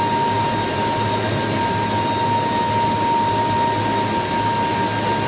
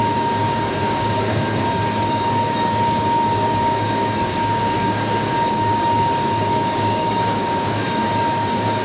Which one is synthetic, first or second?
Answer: second